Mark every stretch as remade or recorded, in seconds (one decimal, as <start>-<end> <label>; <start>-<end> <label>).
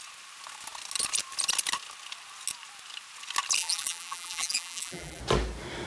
0.0-3.6 recorded; 3.6-5.2 remade; 5.2-5.9 recorded